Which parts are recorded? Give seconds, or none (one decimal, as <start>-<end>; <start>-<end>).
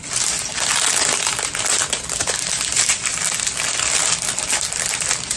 0.0-5.4